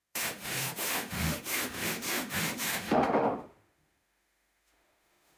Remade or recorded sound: remade